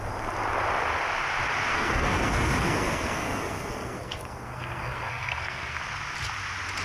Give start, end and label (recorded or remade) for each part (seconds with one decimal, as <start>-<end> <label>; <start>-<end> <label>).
0.0-1.7 recorded; 1.7-5.8 remade; 5.8-6.8 recorded